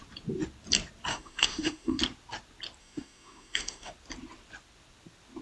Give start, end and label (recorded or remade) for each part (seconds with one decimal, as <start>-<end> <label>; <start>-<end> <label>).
0.0-1.1 recorded; 1.1-2.0 remade; 2.0-2.8 recorded; 2.8-3.9 remade; 3.9-5.4 recorded